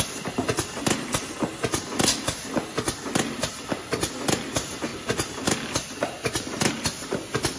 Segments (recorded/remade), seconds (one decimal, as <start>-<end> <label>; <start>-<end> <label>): 0.0-7.6 recorded